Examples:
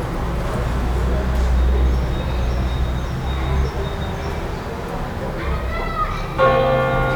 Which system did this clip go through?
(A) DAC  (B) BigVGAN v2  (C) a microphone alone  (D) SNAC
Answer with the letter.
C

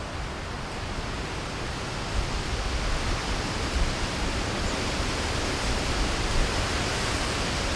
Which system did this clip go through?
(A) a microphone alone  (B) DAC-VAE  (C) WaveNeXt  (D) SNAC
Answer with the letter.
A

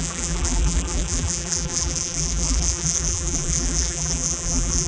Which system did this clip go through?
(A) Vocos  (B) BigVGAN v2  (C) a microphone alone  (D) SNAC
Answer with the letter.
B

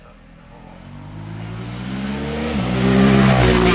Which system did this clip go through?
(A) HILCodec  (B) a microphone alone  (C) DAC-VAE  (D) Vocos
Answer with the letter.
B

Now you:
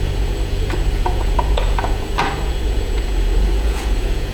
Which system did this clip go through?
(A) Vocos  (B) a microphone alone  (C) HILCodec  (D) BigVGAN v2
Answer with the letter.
A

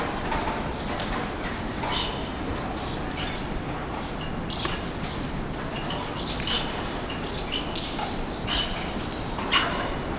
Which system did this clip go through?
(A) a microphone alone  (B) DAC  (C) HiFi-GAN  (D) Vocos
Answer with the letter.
A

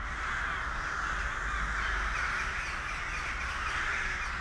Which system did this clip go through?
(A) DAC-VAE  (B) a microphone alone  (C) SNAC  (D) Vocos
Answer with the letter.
B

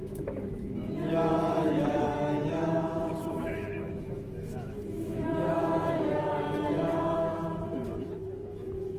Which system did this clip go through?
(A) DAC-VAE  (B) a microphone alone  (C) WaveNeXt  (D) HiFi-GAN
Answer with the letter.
A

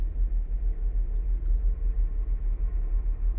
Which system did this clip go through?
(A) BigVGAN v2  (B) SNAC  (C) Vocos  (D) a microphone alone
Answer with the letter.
D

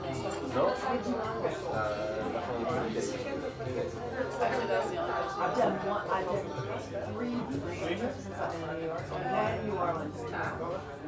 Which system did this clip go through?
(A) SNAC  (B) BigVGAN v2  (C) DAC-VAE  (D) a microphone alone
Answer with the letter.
D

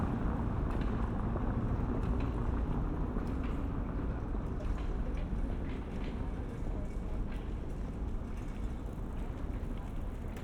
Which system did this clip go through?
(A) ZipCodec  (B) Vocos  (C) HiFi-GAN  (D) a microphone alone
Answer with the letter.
D